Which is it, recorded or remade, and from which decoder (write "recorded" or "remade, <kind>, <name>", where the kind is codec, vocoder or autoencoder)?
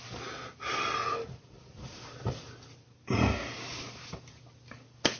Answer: recorded